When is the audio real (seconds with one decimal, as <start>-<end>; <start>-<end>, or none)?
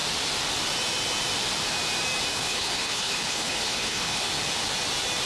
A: 0.0-2.3; 4.3-5.3